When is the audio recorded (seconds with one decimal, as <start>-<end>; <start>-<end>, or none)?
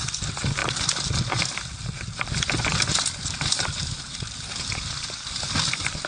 0.0-6.1